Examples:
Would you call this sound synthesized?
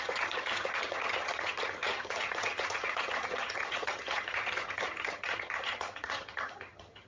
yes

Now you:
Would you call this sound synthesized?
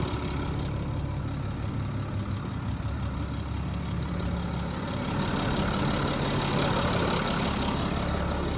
no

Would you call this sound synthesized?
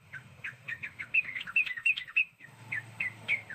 yes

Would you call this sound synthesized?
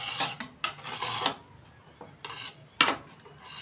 no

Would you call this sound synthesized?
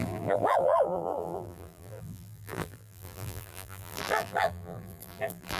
yes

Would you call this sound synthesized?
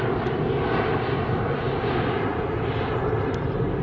no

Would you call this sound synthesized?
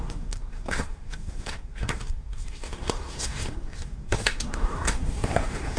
yes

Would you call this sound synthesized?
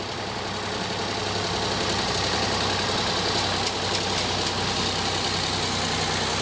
no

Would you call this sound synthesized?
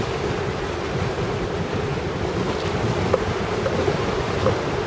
no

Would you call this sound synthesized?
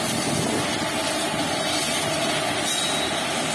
no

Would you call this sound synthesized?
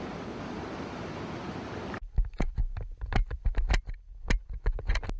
no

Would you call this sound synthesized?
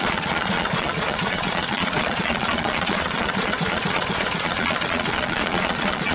yes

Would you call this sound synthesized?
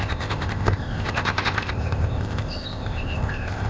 yes